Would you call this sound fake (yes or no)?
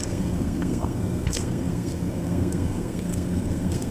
yes